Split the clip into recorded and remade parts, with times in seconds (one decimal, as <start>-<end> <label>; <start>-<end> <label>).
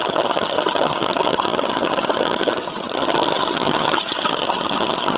0.0-5.2 remade